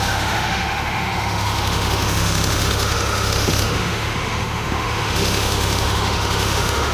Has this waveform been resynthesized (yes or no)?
yes